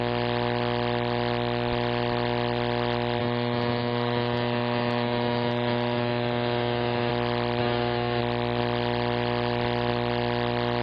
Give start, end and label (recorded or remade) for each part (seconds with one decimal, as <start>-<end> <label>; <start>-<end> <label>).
0.0-3.2 recorded; 3.2-7.1 remade; 7.1-7.6 recorded; 7.6-8.2 remade; 8.2-10.8 recorded